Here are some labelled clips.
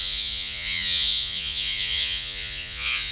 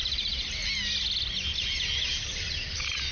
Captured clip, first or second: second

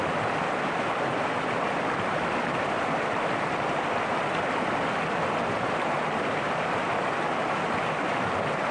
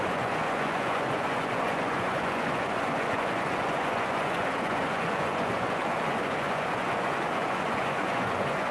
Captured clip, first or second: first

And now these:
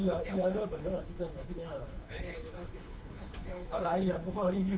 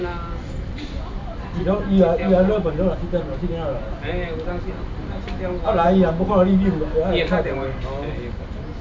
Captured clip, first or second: second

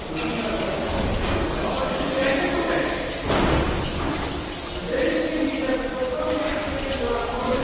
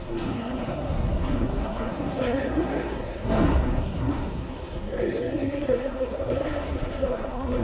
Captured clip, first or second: first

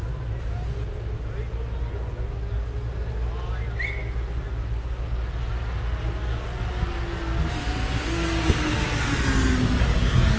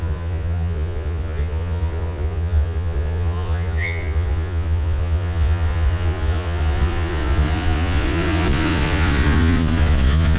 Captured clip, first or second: first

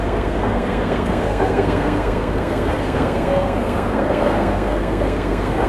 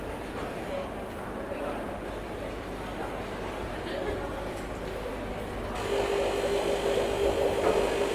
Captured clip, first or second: second